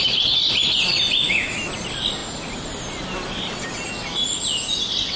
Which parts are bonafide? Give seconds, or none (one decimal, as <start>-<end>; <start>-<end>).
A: 0.0-1.2; 1.7-5.2